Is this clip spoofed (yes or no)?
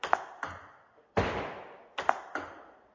no